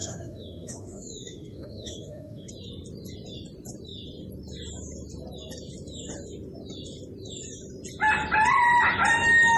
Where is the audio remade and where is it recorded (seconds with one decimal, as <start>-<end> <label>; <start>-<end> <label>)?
0.0-2.5 remade; 2.5-9.6 recorded